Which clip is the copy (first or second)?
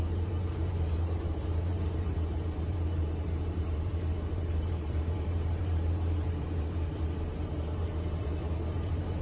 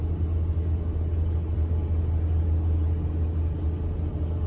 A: first